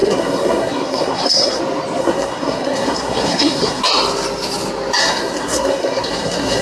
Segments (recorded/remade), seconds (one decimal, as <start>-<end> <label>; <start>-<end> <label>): 0.0-1.6 remade; 1.6-2.0 recorded; 2.0-3.8 remade; 3.8-5.0 recorded; 5.0-6.6 remade